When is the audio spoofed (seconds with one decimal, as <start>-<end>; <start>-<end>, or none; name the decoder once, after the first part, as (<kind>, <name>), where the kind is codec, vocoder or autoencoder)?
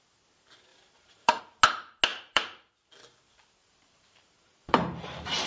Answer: 0.7-1.4 (vocoder, BigVGAN v2); 2.1-2.7; 3.6-5.5